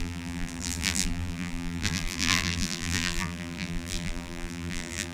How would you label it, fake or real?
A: fake